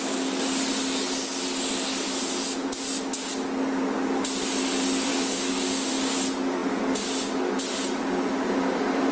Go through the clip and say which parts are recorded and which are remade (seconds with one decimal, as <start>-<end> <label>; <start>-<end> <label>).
0.0-5.1 recorded; 5.1-5.9 remade; 5.9-9.1 recorded